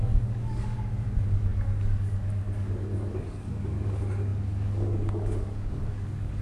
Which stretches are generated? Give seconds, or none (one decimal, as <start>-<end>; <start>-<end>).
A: 0.0-6.4